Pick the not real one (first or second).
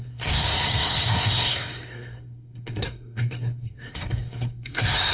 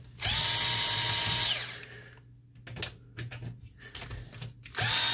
first